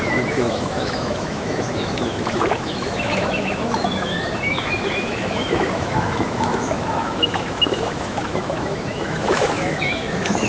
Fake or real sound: fake